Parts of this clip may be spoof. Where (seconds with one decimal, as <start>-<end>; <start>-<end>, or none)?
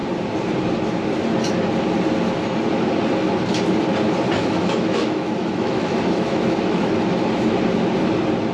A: 4.4-6.9